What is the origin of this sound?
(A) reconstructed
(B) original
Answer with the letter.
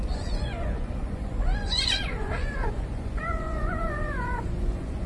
A